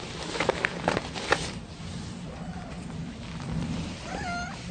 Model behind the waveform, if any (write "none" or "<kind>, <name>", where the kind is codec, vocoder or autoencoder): none